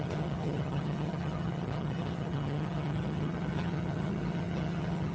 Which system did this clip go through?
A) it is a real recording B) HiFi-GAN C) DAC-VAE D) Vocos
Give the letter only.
B